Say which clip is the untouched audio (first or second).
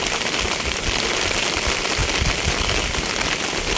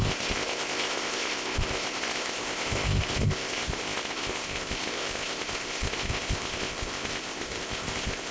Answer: first